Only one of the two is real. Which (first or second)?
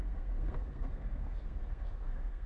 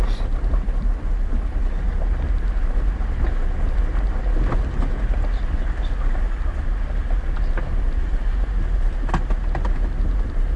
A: second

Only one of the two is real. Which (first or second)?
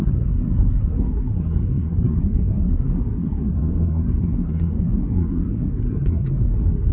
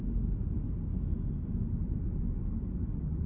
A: second